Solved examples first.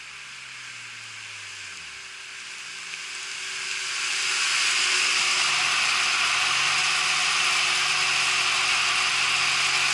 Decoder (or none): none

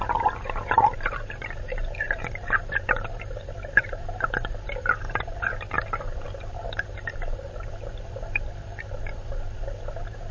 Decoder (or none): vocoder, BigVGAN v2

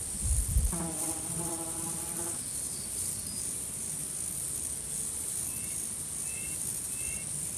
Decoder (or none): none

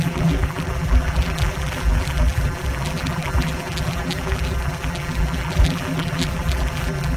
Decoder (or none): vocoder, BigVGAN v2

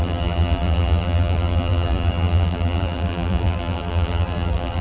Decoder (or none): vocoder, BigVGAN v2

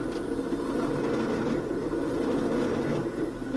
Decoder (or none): none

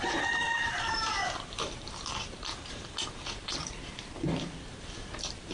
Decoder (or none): vocoder, BigVGAN v2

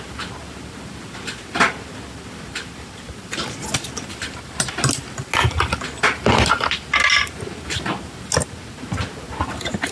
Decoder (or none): none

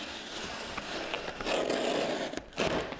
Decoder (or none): none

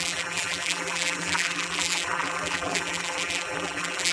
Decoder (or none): vocoder, BigVGAN v2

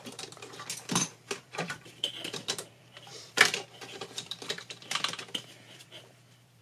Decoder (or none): vocoder, BigVGAN v2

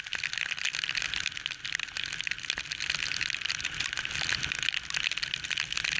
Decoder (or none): none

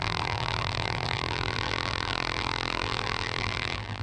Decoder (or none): vocoder, BigVGAN v2